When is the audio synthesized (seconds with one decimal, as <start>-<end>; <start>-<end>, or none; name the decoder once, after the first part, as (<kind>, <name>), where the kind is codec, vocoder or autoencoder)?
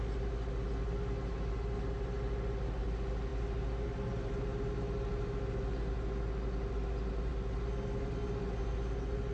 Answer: none